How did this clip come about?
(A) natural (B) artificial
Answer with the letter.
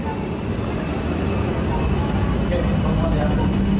A